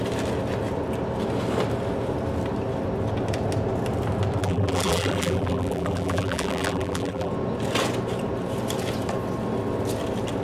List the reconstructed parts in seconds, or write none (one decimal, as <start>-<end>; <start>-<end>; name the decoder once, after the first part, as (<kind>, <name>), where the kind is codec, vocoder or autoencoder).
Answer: 4.4-7.3 (vocoder, BigVGAN v2)